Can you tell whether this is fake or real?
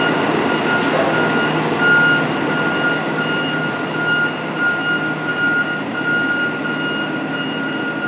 real